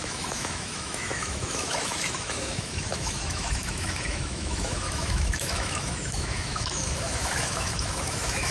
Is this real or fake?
fake